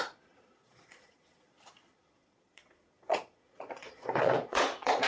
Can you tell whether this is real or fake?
fake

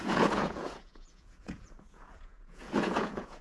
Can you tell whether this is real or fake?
fake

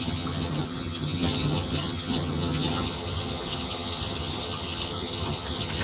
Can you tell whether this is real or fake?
fake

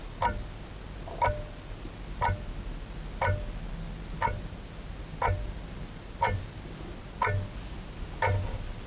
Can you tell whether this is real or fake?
real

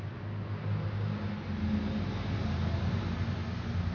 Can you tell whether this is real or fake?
real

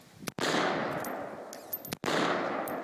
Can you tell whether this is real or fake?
real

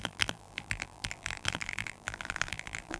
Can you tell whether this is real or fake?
fake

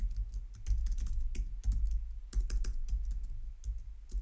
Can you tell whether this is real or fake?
real